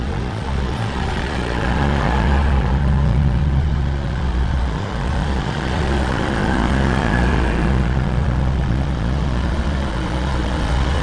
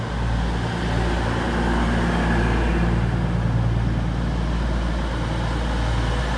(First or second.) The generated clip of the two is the first